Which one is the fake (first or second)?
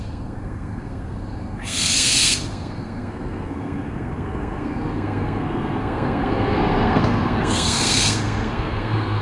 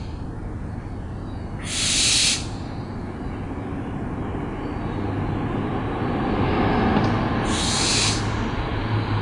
first